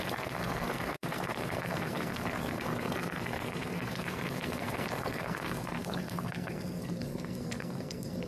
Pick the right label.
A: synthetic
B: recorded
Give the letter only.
A